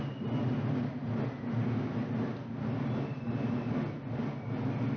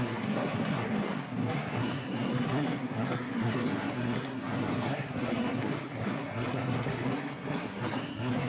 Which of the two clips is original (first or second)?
first